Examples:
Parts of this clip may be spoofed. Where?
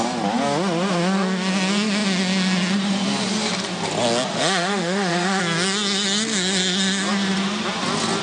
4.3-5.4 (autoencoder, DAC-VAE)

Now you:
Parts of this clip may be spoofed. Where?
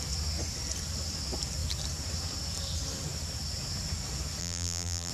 4.4-5.1 (vocoder, BigVGAN v2)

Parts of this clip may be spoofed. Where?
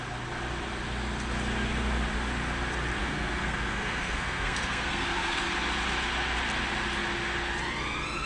3.0-5.5 (codec, SNAC)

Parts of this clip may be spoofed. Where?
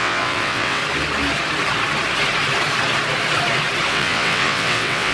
0.0-0.8 (vocoder, WaveNeXt); 3.9-5.1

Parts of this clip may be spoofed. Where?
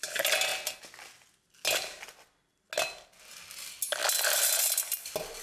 none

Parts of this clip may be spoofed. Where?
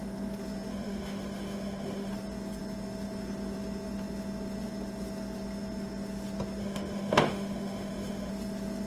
0.7-2.1 (autoencoder, DAC-VAE); 6.6-8.3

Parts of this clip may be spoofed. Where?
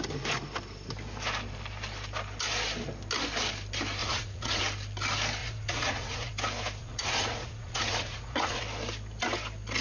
4.0-4.6 (vocoder, Vocos); 5.4-6.3; 6.8-8.6